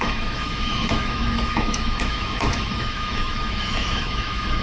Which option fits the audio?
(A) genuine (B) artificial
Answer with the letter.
B